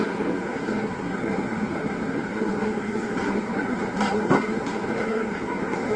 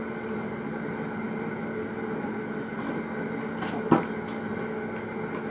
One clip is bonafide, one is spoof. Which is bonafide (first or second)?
second